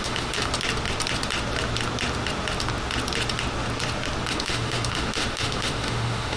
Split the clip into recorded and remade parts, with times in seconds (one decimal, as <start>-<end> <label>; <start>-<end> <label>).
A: 0.0-0.5 remade; 0.5-4.3 recorded; 4.3-6.4 remade

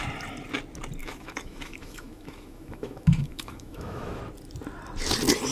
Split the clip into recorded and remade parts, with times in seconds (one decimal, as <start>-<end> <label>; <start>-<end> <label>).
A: 0.0-1.0 recorded; 1.0-4.2 remade; 4.2-5.5 recorded

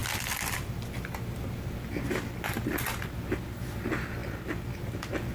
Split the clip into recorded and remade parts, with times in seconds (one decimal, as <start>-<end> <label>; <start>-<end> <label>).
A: 0.0-5.3 recorded

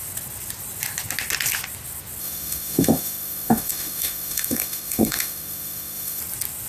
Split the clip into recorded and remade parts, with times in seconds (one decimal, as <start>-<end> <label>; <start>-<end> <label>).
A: 0.0-2.2 recorded; 2.2-6.2 remade; 6.2-6.7 recorded